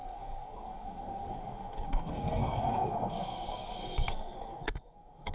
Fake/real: fake